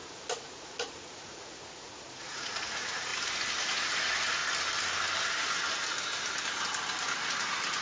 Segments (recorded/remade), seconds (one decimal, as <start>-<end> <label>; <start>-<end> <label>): 0.0-3.1 remade; 3.1-3.6 recorded; 3.6-4.4 remade; 4.4-7.8 recorded